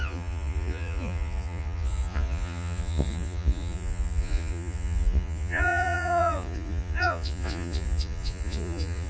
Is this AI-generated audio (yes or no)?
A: yes